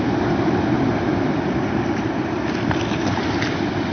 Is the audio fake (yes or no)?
yes